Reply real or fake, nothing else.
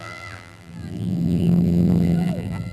fake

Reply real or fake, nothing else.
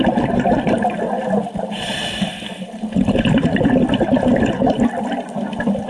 real